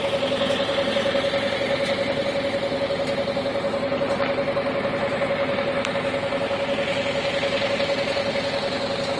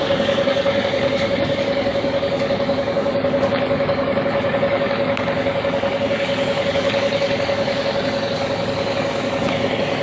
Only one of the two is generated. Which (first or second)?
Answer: second